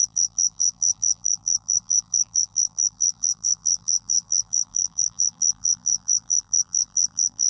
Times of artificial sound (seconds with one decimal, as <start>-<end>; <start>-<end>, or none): 0.0-7.5